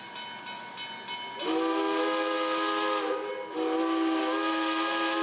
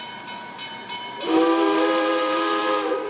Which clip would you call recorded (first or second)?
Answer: first